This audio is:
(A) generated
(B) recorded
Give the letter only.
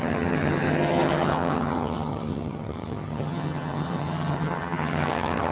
A